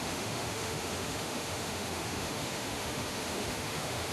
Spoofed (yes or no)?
yes